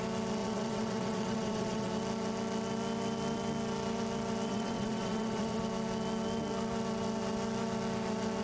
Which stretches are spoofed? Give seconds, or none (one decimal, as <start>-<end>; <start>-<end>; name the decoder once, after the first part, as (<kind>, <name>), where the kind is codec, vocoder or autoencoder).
0.4-1.9 (vocoder, WaveNeXt); 4.5-5.6